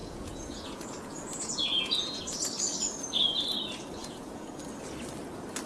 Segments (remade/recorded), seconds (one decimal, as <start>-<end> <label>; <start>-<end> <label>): 0.0-2.2 remade; 2.2-4.0 recorded; 4.0-4.6 remade; 4.6-5.7 recorded